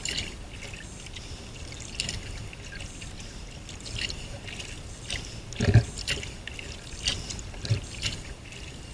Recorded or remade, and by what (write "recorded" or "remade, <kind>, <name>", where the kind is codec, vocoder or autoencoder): recorded